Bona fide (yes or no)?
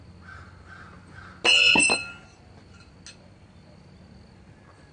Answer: yes